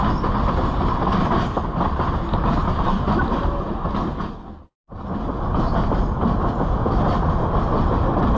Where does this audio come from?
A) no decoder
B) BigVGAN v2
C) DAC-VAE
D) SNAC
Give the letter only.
A